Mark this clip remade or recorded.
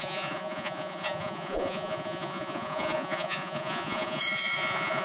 remade